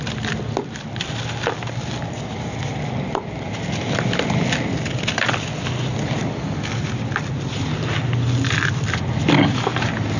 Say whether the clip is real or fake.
real